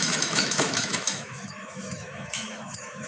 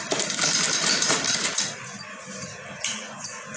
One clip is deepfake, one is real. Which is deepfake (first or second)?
first